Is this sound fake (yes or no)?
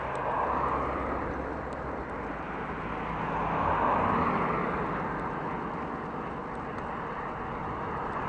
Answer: no